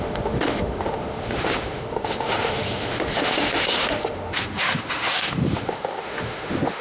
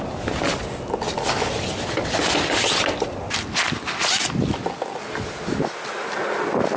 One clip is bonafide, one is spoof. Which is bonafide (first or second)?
second